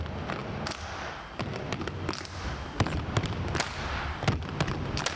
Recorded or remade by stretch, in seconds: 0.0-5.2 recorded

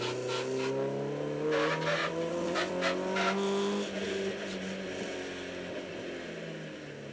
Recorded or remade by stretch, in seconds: 0.0-2.0 recorded; 2.0-2.7 remade; 2.7-7.1 recorded

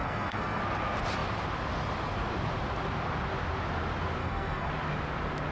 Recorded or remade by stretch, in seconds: 0.0-0.6 remade; 0.6-4.2 recorded; 4.2-4.7 remade; 4.7-5.5 recorded

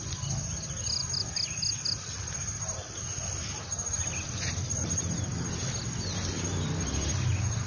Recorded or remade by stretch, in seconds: 0.0-7.7 recorded